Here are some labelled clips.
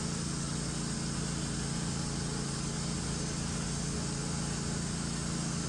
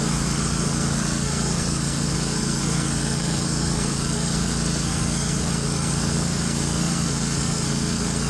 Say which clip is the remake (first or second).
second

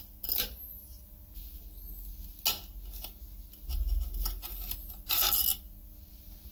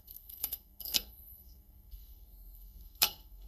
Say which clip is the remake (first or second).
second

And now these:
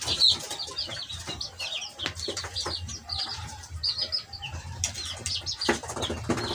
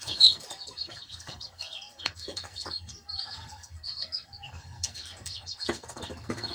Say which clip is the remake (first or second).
second